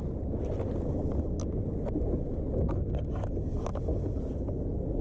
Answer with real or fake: real